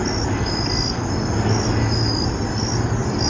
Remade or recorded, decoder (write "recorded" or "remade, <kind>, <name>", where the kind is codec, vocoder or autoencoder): recorded